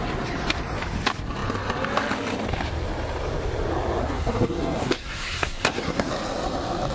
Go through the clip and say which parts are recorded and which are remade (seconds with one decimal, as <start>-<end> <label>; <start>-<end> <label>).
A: 0.0-4.0 recorded; 4.0-6.1 remade; 6.1-6.9 recorded